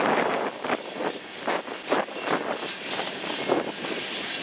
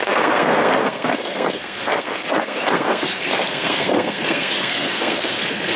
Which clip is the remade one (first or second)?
second